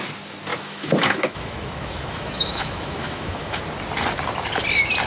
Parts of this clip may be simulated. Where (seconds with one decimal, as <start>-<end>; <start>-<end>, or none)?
0.5-3.6